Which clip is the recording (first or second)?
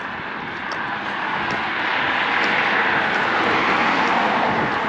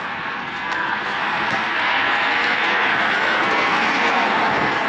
first